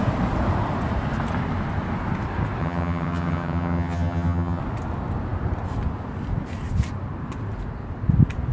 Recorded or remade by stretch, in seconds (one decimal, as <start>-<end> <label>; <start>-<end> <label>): 0.0-2.6 recorded; 2.6-4.6 remade; 4.6-8.5 recorded